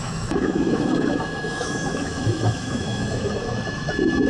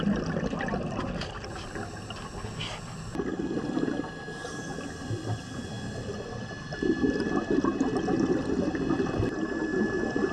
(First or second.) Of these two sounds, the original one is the second